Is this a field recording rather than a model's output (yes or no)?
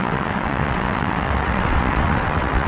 no